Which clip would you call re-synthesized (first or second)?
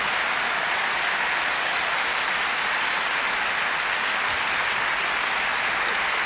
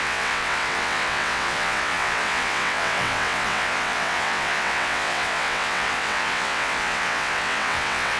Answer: second